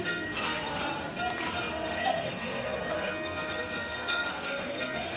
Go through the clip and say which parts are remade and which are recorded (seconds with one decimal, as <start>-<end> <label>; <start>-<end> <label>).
0.0-0.9 remade; 0.9-1.7 recorded; 1.7-5.2 remade